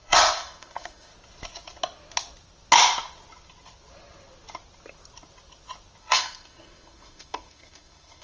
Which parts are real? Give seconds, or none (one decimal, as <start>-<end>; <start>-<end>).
1.1-6.0